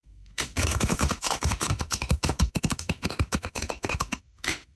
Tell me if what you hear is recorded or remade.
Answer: remade